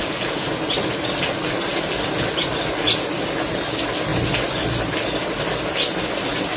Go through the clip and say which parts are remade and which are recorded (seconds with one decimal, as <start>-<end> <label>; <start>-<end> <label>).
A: 0.0-6.6 recorded